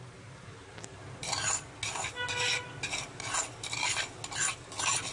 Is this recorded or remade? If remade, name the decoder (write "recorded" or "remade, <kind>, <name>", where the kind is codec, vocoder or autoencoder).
recorded